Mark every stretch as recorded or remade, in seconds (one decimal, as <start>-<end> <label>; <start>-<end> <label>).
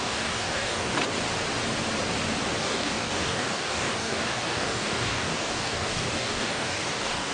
0.0-0.9 remade; 0.9-2.6 recorded; 2.6-7.3 remade